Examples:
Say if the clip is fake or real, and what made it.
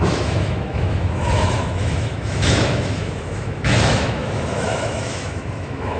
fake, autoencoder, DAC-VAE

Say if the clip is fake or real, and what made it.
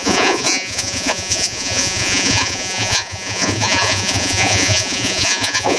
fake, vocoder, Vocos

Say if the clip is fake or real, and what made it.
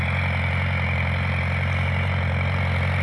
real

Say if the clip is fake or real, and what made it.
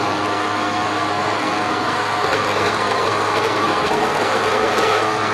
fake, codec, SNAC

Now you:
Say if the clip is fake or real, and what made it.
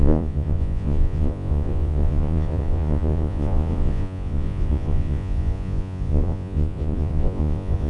fake, vocoder, Vocos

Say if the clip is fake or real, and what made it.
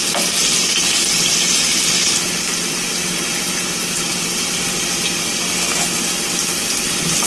fake, vocoder, BigVGAN v2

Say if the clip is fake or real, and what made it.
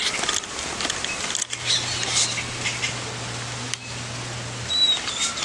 real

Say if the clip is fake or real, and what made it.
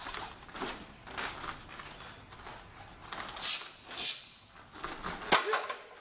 real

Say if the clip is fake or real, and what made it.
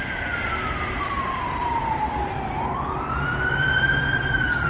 fake, vocoder, BigVGAN v2